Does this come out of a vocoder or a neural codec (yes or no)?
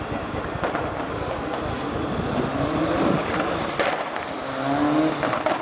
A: no